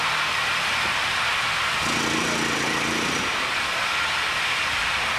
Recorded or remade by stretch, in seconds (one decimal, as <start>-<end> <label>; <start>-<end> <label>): 0.0-5.2 recorded